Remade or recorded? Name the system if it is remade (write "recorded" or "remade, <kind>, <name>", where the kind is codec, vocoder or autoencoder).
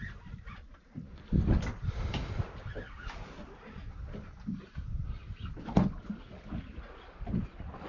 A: recorded